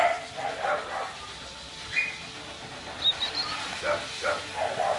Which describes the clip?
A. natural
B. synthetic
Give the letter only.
A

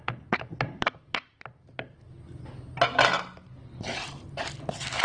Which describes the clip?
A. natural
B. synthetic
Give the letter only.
A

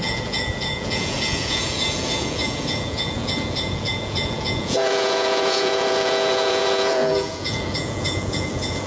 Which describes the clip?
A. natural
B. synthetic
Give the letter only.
B